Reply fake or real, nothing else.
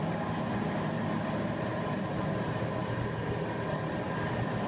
real